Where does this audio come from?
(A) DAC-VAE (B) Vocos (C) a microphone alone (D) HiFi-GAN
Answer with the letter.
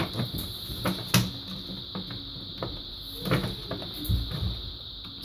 C